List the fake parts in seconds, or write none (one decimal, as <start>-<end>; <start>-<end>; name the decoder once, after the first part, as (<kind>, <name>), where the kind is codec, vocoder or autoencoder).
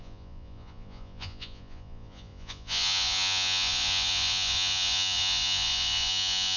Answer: 0.0-6.6 (vocoder, Vocos)